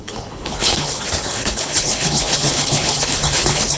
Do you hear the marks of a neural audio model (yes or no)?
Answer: yes